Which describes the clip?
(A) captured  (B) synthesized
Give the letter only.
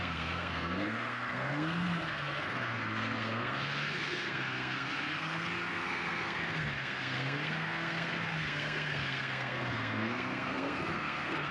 B